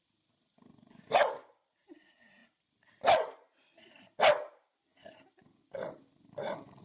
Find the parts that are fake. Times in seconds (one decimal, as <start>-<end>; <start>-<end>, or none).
none